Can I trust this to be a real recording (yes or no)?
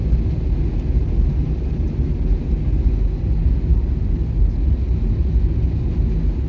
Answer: yes